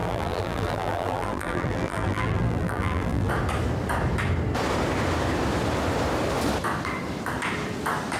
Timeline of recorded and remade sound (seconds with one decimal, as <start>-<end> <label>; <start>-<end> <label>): 0.0-3.3 remade; 3.3-8.2 recorded